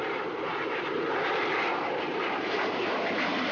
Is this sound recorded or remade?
remade